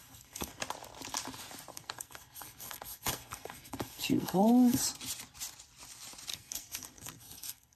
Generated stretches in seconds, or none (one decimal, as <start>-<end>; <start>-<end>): 0.0-0.6; 1.7-4.8; 6.3-7.8